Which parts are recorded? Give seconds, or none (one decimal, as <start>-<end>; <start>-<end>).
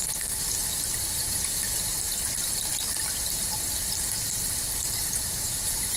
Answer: 0.0-1.2; 1.6-5.0